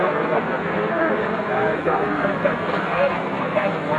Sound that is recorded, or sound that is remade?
remade